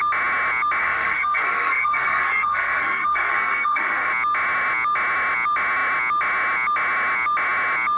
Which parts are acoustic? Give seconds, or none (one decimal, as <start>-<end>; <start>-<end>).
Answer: 0.0-0.8; 4.1-8.0